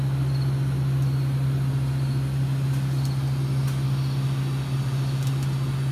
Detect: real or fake real